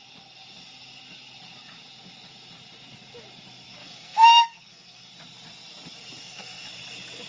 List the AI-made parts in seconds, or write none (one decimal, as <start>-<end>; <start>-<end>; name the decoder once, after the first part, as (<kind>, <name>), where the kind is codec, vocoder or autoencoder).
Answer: 3.7-5.1 (codec, SNAC); 6.2-6.7